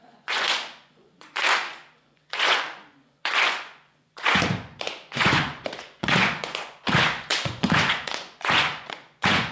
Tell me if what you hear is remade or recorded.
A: remade